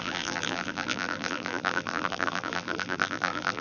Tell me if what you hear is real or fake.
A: fake